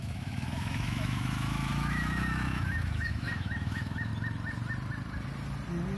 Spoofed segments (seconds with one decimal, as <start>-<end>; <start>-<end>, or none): 0.0-4.1